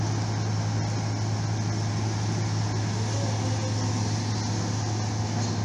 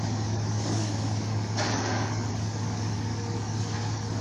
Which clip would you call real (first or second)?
first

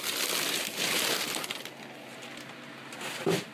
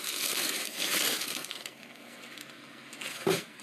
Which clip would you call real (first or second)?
first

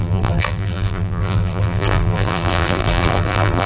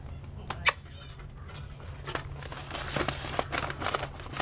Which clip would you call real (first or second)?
second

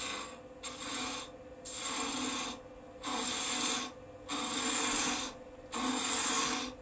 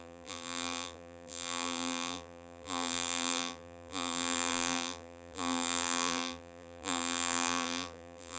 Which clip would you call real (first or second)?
first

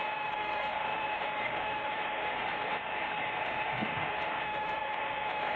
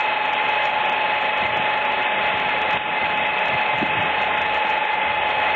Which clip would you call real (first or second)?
second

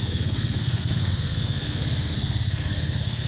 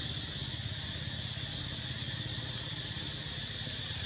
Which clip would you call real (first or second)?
second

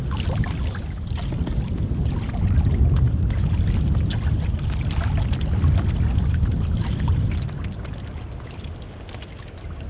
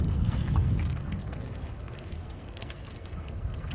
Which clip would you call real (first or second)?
first